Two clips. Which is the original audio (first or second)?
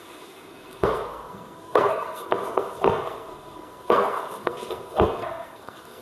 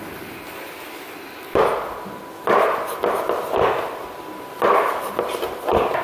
second